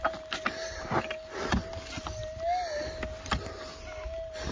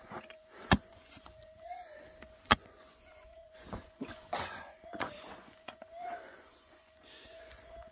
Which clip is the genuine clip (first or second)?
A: first